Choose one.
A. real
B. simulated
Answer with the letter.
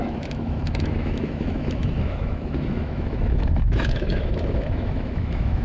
B